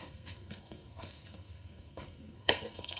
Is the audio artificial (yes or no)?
yes